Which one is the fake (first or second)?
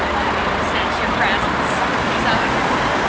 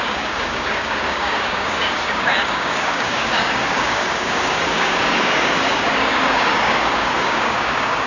second